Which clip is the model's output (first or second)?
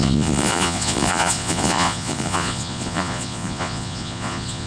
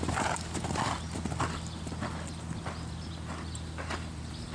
first